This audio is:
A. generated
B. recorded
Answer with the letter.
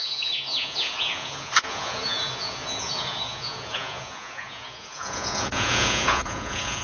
A